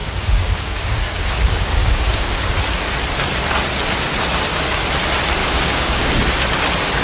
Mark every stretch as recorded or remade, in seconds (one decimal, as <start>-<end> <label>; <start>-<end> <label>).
0.0-2.5 remade; 2.5-5.4 recorded; 5.4-6.1 remade; 6.1-7.0 recorded